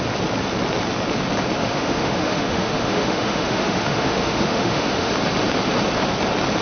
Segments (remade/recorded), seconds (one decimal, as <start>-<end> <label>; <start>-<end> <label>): 0.0-1.6 recorded; 1.6-5.1 remade; 5.1-6.6 recorded